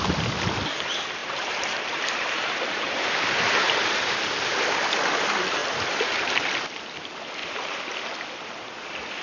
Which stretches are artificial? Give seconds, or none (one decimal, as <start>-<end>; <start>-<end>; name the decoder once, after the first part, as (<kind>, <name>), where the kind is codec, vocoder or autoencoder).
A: 1.2-4.0 (vocoder, BigVGAN v2); 5.6-6.5; 7.4-7.9